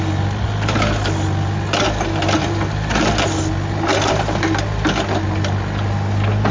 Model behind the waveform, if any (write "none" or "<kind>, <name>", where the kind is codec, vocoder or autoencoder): none